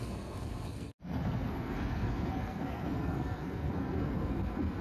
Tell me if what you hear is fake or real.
fake